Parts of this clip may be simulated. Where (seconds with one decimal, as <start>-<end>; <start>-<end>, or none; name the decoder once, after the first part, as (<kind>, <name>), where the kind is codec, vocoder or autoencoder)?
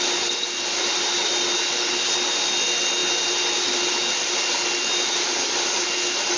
none